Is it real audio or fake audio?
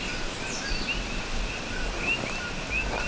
real